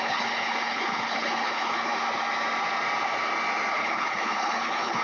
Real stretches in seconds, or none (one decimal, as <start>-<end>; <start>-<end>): 1.9-3.7